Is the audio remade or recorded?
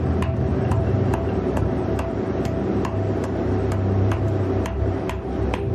remade